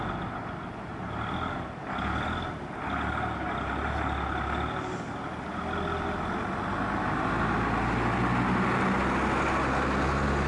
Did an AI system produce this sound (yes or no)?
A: no